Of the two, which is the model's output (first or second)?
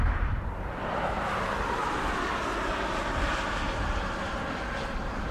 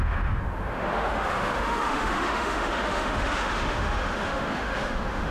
second